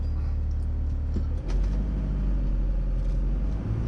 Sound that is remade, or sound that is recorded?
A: recorded